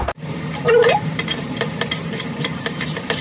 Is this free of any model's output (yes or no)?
no